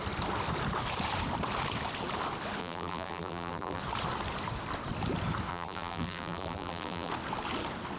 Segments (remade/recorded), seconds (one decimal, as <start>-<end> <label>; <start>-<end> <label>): 0.0-2.6 recorded; 2.6-3.8 remade; 3.8-5.5 recorded; 5.5-7.1 remade; 7.1-8.0 recorded